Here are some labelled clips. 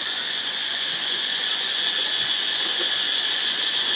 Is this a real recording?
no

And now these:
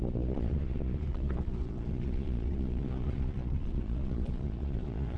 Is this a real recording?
no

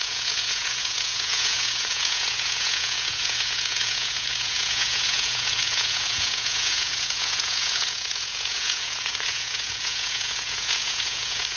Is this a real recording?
no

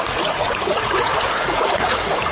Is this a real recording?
no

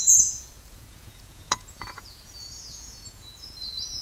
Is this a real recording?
no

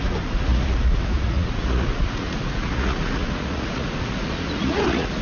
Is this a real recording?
no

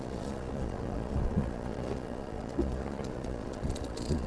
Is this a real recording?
no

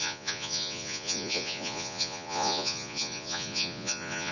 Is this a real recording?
no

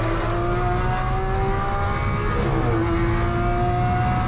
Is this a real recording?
yes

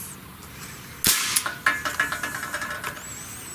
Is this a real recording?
yes